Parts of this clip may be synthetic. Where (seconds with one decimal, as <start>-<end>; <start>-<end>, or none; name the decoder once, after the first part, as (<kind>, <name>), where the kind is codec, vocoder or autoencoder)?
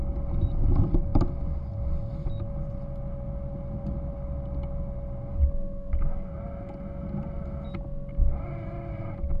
5.3-6.3 (codec, DAC)